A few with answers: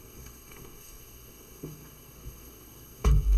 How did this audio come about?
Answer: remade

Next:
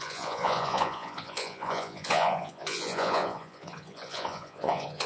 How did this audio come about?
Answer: remade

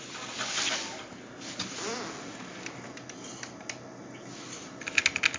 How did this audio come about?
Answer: recorded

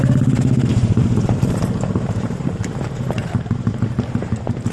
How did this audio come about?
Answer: remade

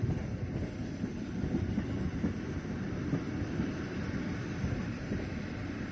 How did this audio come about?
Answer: remade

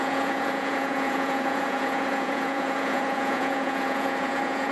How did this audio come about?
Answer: remade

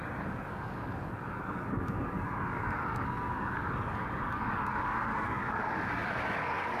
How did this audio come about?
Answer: remade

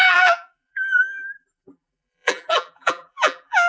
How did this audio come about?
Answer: remade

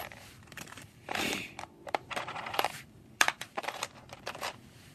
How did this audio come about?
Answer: remade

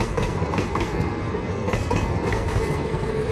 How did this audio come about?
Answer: remade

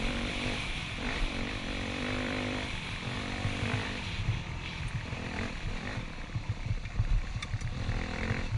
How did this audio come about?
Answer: remade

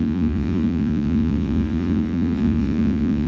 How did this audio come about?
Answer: remade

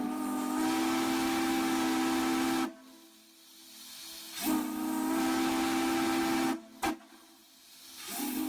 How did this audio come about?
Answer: recorded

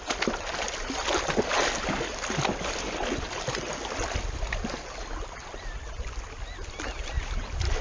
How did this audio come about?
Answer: recorded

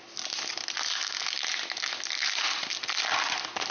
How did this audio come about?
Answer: recorded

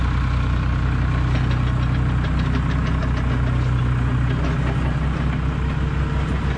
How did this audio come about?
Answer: recorded